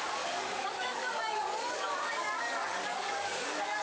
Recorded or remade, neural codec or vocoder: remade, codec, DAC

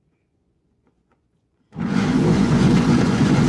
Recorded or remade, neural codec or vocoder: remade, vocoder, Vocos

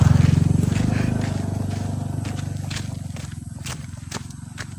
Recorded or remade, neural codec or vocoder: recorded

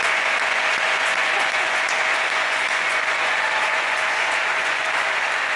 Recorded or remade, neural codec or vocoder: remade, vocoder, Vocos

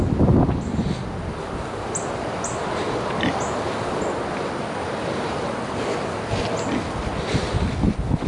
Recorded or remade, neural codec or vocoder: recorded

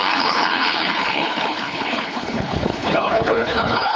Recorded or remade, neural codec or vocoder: remade, codec, HILCodec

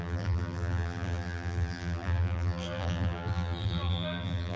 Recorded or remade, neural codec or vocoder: remade, vocoder, BigVGAN v2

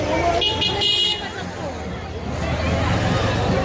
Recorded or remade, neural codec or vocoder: recorded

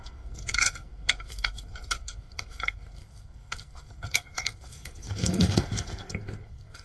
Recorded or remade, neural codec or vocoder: remade, codec, SNAC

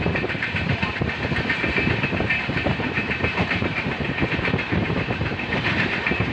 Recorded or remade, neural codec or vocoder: remade, vocoder, BigVGAN v2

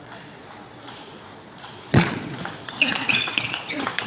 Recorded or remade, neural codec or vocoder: remade, vocoder, Vocos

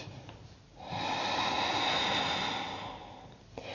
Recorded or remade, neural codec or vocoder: recorded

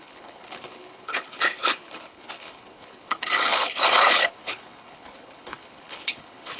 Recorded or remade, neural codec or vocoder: remade, codec, HILCodec